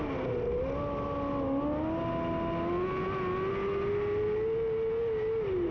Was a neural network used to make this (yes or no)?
no